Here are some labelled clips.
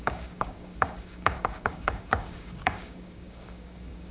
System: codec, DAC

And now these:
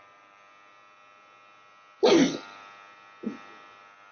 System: none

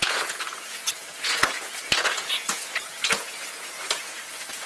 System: vocoder, Vocos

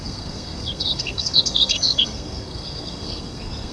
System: codec, SNAC